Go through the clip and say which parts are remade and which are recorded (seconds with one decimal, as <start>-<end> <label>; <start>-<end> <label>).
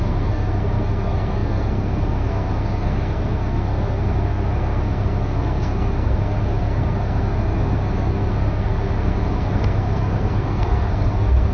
0.0-11.5 remade